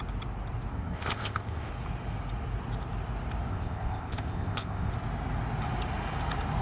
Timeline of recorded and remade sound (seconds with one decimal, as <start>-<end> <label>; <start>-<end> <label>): 0.0-0.7 recorded; 0.7-1.7 remade; 1.7-3.5 recorded; 3.5-4.9 remade; 4.9-6.6 recorded